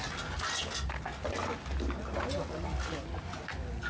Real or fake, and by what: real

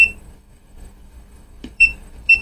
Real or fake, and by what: fake, codec, DAC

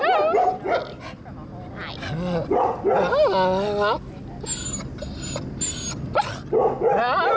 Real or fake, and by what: real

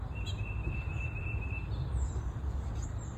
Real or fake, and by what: real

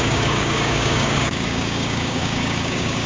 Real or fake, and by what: fake, codec, DAC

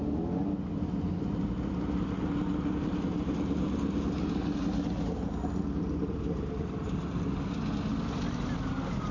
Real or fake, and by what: real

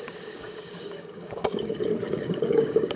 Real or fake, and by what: fake, codec, DAC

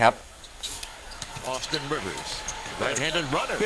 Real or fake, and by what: fake, codec, DAC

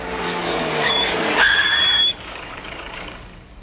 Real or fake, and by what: fake, codec, DAC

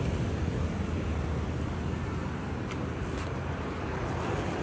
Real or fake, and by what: real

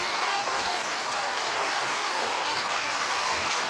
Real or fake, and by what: fake, codec, DAC